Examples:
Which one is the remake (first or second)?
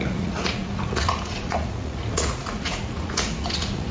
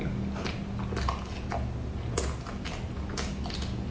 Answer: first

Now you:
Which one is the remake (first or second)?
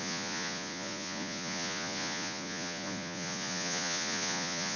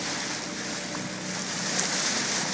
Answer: first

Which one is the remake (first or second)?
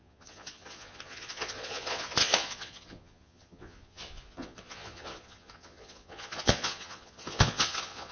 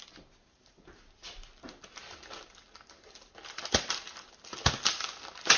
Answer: first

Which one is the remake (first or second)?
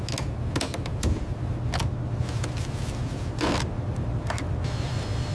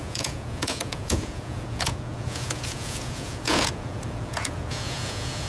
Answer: second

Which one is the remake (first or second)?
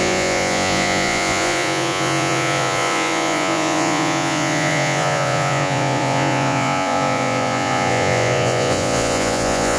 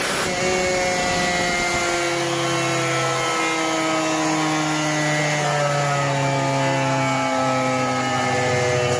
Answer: first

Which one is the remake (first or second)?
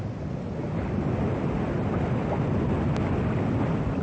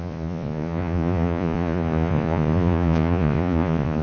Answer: second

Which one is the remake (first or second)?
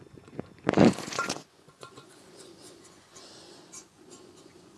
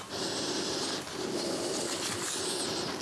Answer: first